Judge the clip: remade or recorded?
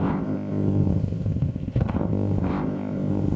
remade